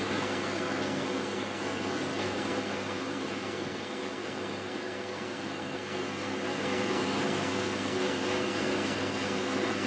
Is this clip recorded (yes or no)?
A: no